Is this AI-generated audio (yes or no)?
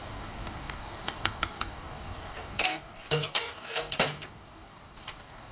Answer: yes